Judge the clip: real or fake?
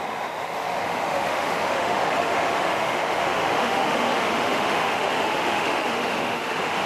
fake